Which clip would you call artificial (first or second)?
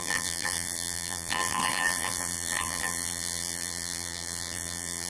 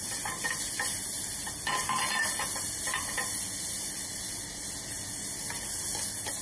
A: first